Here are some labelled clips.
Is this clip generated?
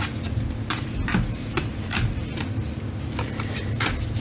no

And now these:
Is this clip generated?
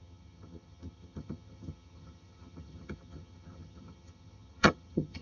yes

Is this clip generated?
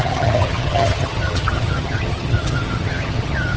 yes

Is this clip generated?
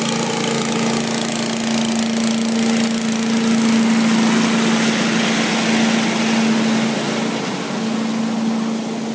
no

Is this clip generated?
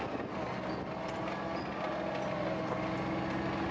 no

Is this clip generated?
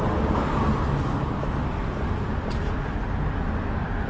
no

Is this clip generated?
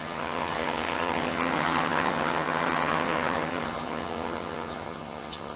yes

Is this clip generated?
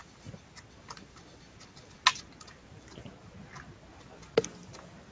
no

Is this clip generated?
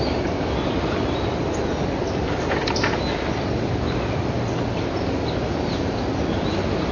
no